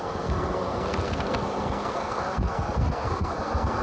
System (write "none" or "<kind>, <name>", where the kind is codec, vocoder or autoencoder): codec, SNAC